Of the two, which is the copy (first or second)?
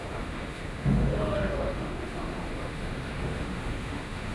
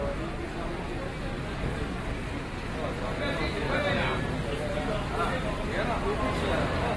first